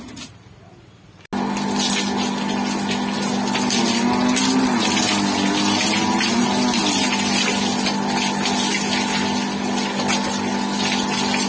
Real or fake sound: real